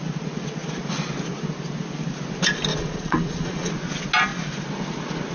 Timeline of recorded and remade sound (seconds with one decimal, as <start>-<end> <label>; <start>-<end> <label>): 0.0-2.7 recorded; 2.7-3.7 remade; 3.7-5.3 recorded